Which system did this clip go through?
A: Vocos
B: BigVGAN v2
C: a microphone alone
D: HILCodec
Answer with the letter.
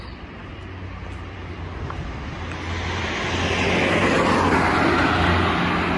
C